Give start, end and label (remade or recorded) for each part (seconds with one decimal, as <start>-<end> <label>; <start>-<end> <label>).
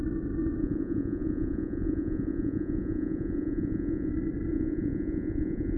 0.0-0.6 recorded; 0.6-4.1 remade; 4.1-4.5 recorded; 4.5-5.8 remade